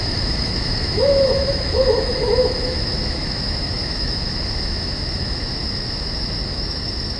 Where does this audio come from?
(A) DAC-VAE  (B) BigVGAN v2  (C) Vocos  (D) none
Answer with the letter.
A